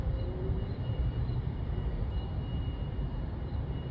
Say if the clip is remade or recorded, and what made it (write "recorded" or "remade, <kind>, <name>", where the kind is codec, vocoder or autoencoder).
remade, vocoder, BigVGAN v2